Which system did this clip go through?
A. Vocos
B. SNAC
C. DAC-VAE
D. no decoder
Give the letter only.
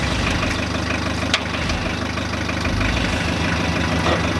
D